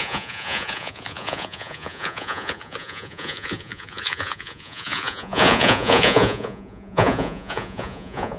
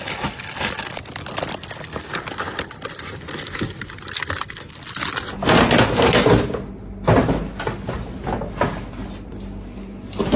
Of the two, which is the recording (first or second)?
second